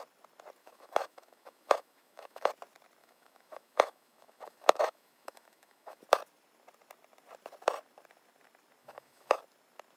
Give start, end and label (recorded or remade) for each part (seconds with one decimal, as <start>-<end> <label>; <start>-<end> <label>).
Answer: 0.0-0.6 recorded; 0.6-2.5 remade; 2.5-3.0 recorded; 3.0-6.0 remade; 6.0-8.8 recorded; 8.8-9.4 remade; 9.4-10.0 recorded